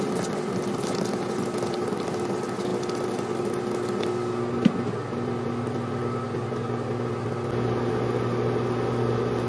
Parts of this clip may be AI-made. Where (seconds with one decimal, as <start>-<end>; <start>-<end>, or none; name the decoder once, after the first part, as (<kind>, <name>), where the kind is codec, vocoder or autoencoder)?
none

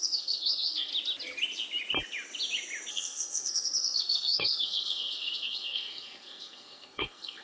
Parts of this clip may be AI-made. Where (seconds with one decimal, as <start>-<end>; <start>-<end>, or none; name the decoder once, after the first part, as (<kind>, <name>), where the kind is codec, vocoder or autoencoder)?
0.0-0.9 (codec, SNAC); 2.9-7.4

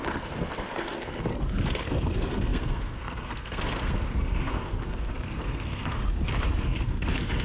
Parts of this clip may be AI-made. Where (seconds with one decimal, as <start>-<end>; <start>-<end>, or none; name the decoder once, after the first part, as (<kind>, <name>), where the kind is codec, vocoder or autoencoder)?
0.0-1.3 (codec, SNAC); 1.8-6.0; 6.6-7.4

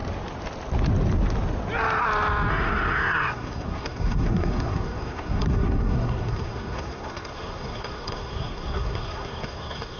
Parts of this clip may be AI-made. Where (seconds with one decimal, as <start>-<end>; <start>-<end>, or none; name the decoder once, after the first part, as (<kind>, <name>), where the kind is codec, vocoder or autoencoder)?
2.5-10.0 (codec, SNAC)

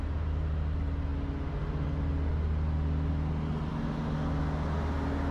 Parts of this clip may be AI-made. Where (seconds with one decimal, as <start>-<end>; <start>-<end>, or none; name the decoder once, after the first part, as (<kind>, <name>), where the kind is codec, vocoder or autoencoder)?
none

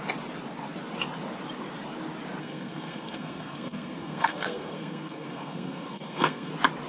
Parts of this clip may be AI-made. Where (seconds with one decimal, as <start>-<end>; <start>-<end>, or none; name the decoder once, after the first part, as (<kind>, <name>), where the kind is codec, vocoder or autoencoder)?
2.4-6.5 (codec, SNAC)

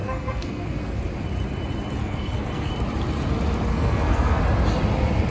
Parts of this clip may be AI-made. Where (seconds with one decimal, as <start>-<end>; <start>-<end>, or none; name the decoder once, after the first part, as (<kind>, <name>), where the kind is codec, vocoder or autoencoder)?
0.0-1.0 (codec, SNAC); 2.0-2.7; 3.7-4.4

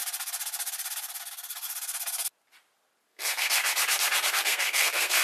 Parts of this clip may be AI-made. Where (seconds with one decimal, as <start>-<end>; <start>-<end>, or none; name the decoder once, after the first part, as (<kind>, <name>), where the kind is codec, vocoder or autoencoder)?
3.1-3.6 (codec, SNAC); 4.3-5.2